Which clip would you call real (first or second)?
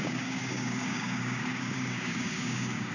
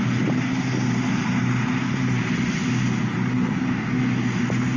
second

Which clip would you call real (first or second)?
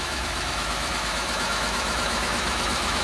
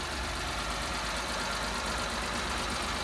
second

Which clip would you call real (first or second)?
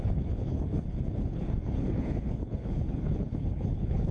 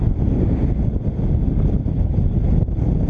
second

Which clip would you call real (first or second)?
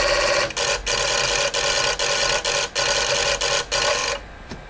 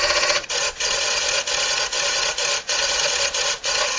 first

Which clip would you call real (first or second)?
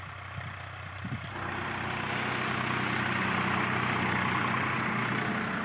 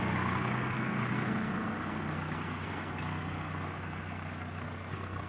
first